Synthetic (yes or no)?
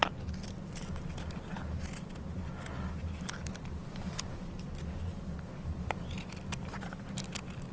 no